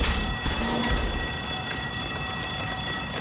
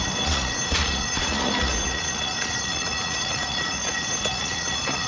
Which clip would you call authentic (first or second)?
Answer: first